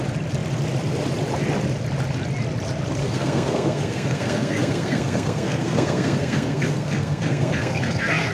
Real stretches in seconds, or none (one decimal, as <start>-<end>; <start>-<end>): 0.0-3.0